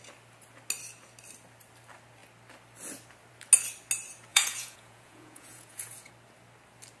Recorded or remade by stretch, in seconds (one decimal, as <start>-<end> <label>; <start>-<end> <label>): 0.0-4.3 recorded; 4.3-6.1 remade; 6.1-7.0 recorded